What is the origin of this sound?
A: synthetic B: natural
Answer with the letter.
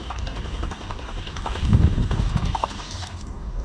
A